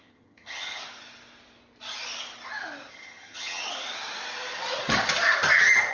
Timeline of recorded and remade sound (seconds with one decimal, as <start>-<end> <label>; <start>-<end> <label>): 0.0-0.8 remade; 0.8-2.9 recorded; 2.9-3.6 remade; 3.6-5.9 recorded

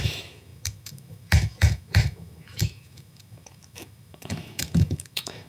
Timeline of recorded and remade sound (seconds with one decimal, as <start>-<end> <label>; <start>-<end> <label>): 0.0-5.5 remade

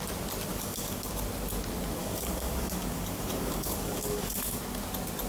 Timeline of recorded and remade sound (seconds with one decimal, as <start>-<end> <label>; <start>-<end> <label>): 0.0-0.5 recorded; 0.5-1.1 remade; 1.1-2.0 recorded; 2.0-4.6 remade; 4.6-5.3 recorded

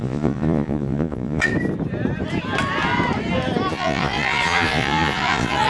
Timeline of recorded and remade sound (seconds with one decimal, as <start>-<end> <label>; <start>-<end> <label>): 0.0-1.5 remade; 1.5-3.7 recorded; 3.7-5.7 remade

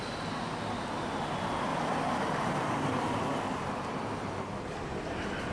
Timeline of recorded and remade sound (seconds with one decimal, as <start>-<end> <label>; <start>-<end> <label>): 0.0-1.7 recorded; 1.7-3.2 remade; 3.2-5.5 recorded

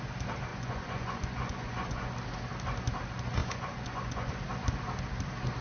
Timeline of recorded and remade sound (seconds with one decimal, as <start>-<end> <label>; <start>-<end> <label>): 0.0-0.5 recorded; 0.5-2.1 remade; 2.1-3.4 recorded; 3.4-4.3 remade; 4.3-5.6 recorded

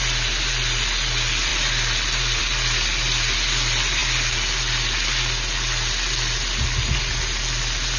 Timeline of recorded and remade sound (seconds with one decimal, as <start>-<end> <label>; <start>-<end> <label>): 0.0-8.0 recorded